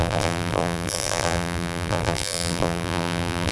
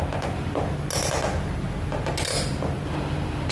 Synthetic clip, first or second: first